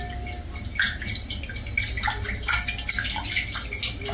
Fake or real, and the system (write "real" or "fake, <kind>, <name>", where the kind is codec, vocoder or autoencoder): real